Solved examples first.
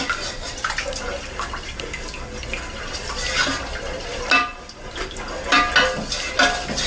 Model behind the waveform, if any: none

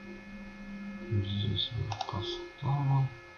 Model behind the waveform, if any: none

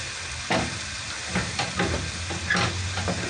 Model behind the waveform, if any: none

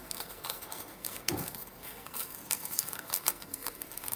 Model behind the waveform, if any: codec, SNAC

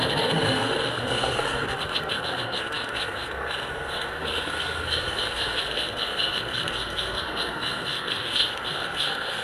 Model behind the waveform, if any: codec, SNAC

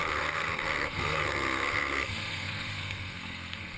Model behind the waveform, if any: codec, SNAC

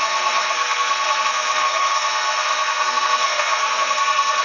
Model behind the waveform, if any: codec, SNAC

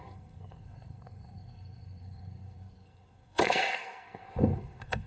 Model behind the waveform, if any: codec, SNAC